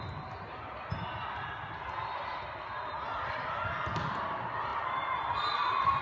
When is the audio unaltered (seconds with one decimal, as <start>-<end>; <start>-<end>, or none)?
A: 0.0-6.0